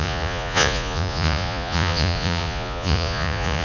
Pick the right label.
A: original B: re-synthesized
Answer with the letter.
B